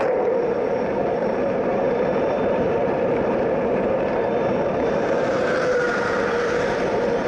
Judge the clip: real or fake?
fake